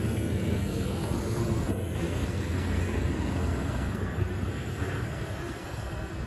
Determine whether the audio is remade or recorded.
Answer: remade